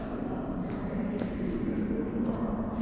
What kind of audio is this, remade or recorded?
remade